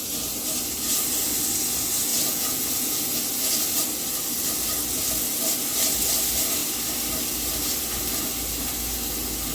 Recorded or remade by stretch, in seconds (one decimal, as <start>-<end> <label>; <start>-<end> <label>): 0.0-2.1 recorded; 2.1-3.0 remade; 3.0-9.5 recorded